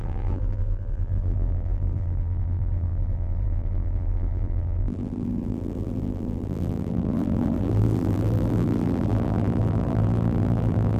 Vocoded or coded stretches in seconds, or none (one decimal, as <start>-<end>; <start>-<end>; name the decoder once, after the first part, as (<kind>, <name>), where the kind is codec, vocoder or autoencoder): 0.0-11.0 (vocoder, BigVGAN v2)